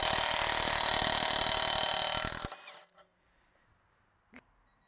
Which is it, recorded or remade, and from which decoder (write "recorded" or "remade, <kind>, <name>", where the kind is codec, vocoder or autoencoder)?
recorded